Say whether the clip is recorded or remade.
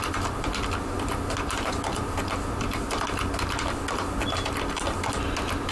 recorded